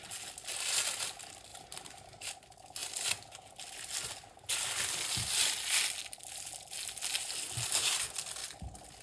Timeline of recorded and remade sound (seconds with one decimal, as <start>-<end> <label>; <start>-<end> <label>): 0.0-1.5 recorded; 1.5-2.3 remade; 2.3-9.0 recorded